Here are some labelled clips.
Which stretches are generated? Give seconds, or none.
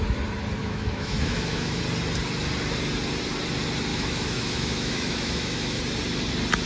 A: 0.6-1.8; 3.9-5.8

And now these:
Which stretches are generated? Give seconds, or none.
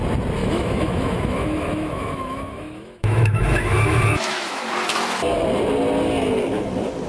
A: 0.4-4.7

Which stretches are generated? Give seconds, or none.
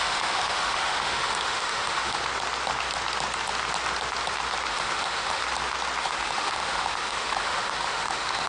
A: 0.0-2.2; 4.7-5.4; 6.0-8.5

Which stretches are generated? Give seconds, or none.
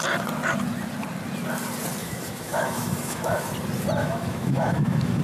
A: 2.0-3.5; 4.0-5.2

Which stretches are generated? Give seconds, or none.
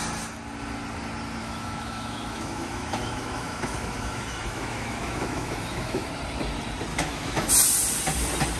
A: 1.4-6.1; 6.9-7.5